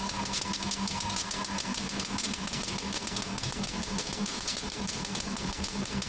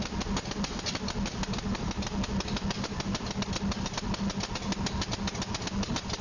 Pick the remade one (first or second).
first